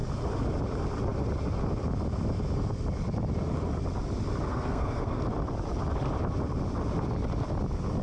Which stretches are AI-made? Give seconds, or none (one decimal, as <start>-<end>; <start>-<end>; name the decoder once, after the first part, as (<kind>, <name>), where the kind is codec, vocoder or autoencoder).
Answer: 4.5-5.2 (codec, SNAC)